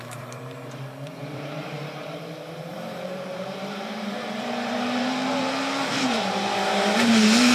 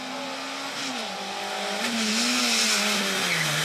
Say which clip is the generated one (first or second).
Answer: first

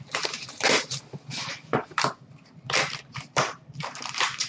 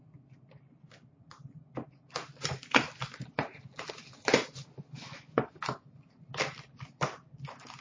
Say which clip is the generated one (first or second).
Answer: first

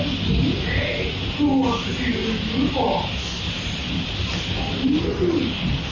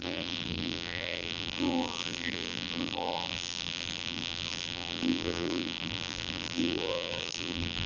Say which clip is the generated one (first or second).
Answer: second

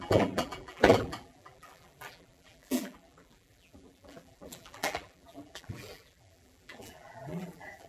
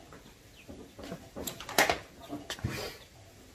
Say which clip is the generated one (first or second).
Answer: first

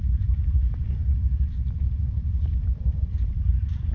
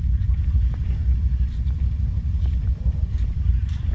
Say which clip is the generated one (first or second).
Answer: first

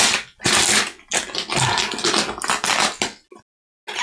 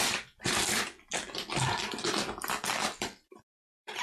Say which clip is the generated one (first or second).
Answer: second